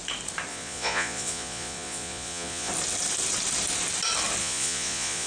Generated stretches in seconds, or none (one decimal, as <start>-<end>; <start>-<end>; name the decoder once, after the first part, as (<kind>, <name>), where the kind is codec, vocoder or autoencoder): 0.5-2.7 (vocoder, Vocos); 4.4-5.3